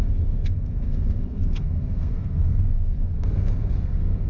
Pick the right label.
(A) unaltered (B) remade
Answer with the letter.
B